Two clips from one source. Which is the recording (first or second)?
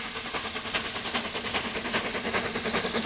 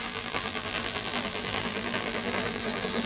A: first